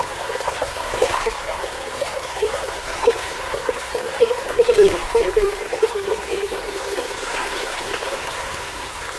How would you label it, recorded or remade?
remade